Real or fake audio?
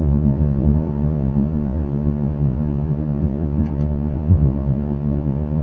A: fake